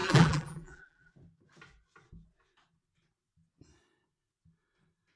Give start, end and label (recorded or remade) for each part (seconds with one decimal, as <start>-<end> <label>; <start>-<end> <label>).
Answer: 0.0-1.1 remade; 1.1-5.2 recorded